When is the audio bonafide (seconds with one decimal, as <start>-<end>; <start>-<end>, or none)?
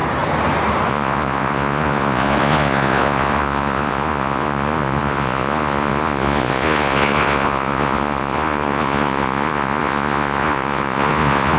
0.0-0.9